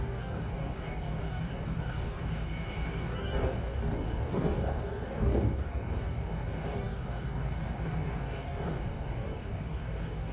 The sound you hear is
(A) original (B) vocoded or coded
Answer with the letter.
B